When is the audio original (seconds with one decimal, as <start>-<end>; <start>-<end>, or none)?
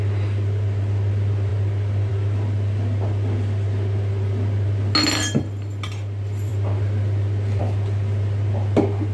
0.0-9.1